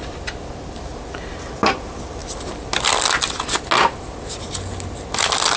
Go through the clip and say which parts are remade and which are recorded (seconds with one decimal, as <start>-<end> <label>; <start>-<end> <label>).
0.0-5.6 recorded